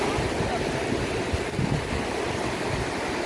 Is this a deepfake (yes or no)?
no